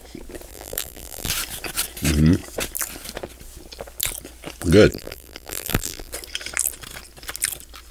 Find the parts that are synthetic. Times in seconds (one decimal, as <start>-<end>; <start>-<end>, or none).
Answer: 0.5-1.3; 4.9-6.1